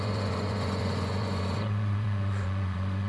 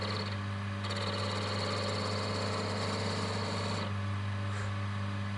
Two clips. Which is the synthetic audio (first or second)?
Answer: first